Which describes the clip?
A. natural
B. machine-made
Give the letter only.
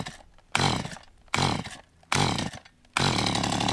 A